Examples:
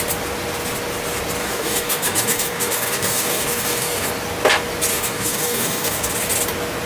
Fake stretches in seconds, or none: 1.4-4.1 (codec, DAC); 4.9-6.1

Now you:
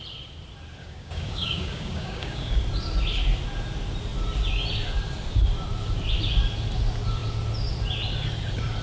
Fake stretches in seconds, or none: 0.8-2.6 (codec, DAC)

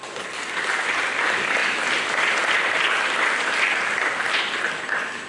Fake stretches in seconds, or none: none